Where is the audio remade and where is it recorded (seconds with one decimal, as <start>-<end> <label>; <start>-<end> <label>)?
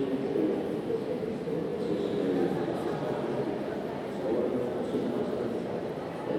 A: 0.0-6.4 recorded